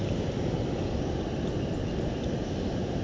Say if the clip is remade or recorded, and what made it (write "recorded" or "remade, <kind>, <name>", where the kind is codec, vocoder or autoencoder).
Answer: recorded